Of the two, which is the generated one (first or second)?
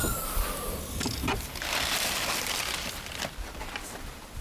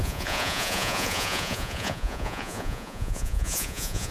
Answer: second